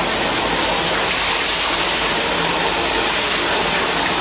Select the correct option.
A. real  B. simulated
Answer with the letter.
B